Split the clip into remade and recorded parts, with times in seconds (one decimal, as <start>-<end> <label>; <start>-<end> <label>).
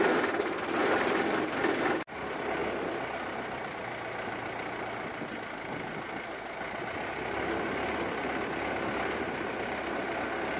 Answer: 0.0-10.6 recorded